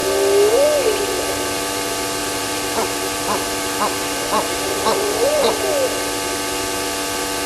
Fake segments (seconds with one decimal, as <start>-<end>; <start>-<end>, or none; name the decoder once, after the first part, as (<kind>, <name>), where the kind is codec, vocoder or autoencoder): 2.2-5.4 (vocoder, BigVGAN v2)